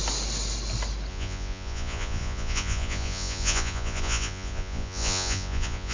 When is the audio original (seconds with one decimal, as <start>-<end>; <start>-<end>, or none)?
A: 0.0-1.1